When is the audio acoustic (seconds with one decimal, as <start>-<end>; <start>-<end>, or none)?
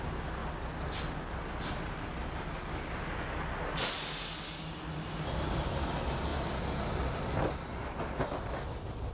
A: 0.0-0.4; 0.9-6.3